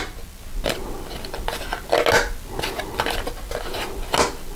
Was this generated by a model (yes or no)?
no